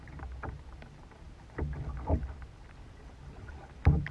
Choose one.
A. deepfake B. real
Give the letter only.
B